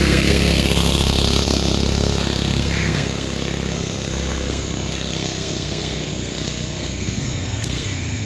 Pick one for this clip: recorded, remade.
remade